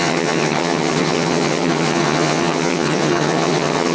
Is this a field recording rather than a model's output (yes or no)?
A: no